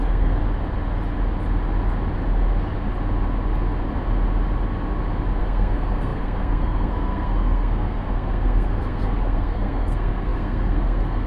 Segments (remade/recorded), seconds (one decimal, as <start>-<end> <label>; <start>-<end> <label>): 0.0-0.4 remade; 0.4-5.4 recorded; 5.4-11.3 remade